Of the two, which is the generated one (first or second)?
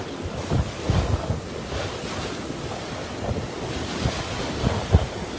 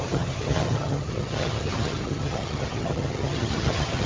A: second